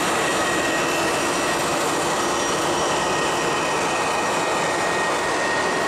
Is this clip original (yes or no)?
yes